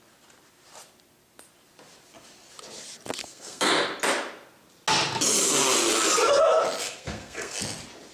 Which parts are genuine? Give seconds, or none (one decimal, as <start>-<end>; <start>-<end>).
0.0-3.2; 3.7-6.8; 7.6-8.1